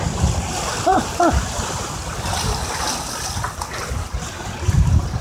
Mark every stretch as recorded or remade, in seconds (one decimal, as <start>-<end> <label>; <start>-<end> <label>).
0.0-5.2 recorded